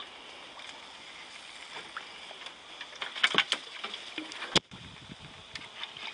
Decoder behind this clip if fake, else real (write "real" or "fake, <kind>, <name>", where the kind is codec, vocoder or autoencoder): real